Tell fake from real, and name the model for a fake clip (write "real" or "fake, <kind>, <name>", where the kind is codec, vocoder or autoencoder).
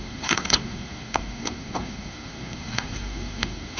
fake, codec, SNAC